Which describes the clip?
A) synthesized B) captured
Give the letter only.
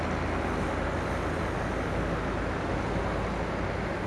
B